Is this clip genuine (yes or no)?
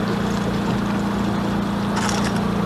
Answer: yes